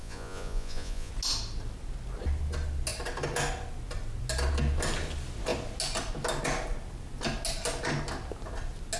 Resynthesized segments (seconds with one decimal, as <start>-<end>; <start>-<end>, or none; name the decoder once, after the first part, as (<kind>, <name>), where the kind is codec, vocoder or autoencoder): 0.0-1.1 (vocoder, Vocos)